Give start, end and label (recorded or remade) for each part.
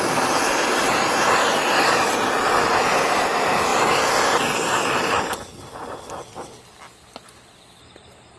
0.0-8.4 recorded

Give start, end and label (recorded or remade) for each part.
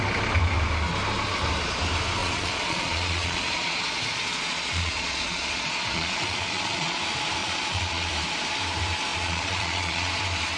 0.0-2.2 recorded; 2.2-7.0 remade; 7.0-7.4 recorded; 7.4-8.1 remade; 8.1-9.1 recorded; 9.1-10.1 remade; 10.1-10.6 recorded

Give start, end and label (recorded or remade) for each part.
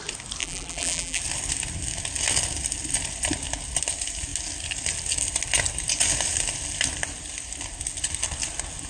0.0-0.4 recorded; 0.4-1.2 remade; 1.2-8.9 recorded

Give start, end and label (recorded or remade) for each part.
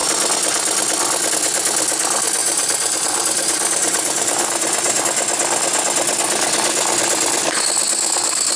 0.0-2.4 recorded; 2.4-5.0 remade; 5.0-8.6 recorded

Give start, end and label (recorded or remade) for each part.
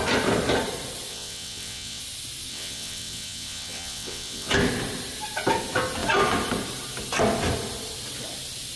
0.0-1.1 recorded; 1.1-2.0 remade; 2.0-2.5 recorded; 2.5-4.5 remade; 4.5-8.8 recorded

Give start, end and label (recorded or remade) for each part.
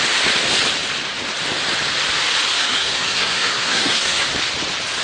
0.0-2.5 recorded; 2.5-4.2 remade; 4.2-5.0 recorded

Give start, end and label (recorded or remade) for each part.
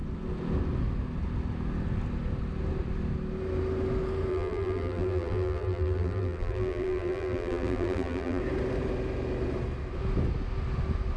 0.0-4.3 recorded; 4.3-8.4 remade; 8.4-11.2 recorded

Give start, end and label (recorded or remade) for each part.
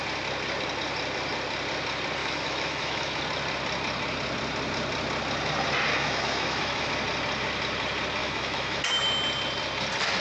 0.0-2.2 recorded; 2.2-3.2 remade; 3.2-5.9 recorded; 5.9-6.9 remade; 6.9-8.2 recorded; 8.2-8.8 remade; 8.8-10.2 recorded